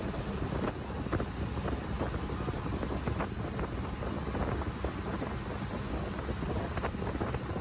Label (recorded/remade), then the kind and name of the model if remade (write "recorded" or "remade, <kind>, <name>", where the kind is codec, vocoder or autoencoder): recorded